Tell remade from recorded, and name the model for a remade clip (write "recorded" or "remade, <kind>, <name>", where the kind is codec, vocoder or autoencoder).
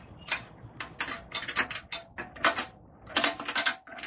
recorded